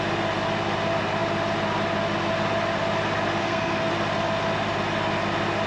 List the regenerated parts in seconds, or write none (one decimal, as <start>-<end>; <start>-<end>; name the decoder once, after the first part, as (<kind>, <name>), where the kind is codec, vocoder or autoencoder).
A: 3.4-3.9 (codec, SNAC)